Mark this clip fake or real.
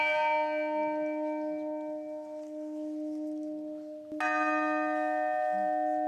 real